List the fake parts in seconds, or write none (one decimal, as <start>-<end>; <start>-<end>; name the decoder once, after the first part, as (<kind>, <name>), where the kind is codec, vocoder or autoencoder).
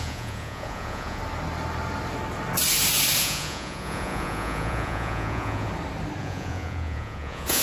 0.0-1.2 (vocoder, Vocos); 3.2-5.7; 6.2-7.6